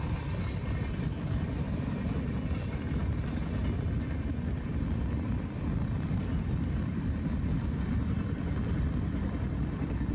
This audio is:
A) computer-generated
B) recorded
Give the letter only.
B